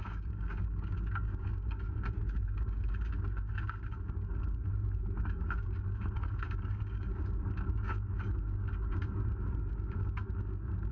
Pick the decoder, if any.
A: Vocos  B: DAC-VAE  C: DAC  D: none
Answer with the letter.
C